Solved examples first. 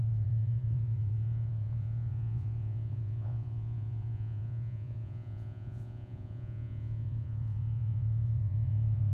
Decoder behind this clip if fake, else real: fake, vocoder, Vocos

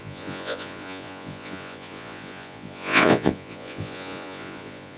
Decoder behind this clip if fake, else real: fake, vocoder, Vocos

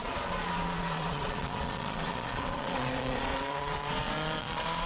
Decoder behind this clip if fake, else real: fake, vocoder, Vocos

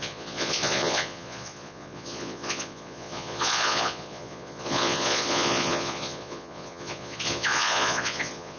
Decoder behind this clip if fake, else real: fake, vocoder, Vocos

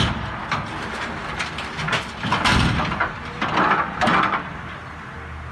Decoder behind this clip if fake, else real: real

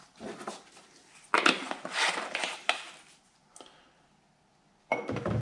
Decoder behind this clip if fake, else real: real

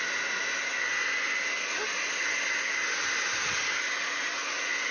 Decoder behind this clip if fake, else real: real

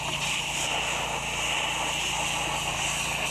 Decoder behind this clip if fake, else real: real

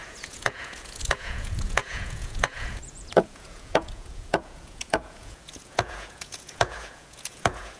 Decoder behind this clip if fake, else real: fake, vocoder, Vocos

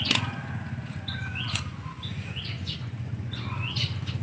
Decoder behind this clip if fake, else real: fake, vocoder, Vocos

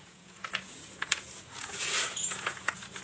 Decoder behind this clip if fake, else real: fake, vocoder, Vocos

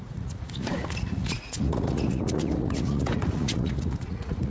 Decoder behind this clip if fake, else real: fake, vocoder, Vocos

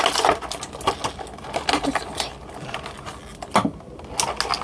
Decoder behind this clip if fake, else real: real